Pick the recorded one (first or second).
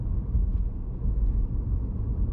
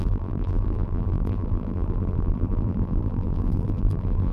first